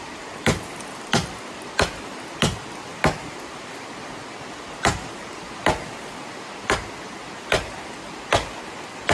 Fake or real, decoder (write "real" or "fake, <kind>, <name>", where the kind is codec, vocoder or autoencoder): real